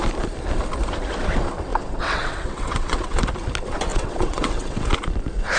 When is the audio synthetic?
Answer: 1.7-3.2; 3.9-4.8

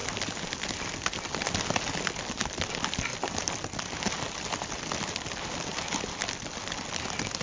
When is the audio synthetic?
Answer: none